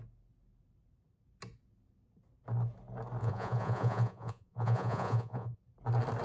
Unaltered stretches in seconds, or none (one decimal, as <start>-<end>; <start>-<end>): 0.0-3.2; 5.6-6.2